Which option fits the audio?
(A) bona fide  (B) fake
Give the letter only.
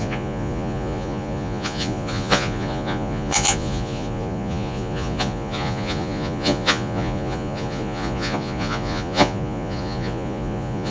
B